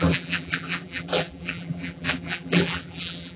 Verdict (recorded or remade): remade